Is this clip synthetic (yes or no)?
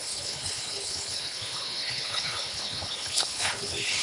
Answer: yes